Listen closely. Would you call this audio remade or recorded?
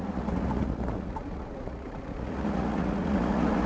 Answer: remade